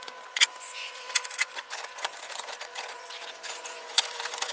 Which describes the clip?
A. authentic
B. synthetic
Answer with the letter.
B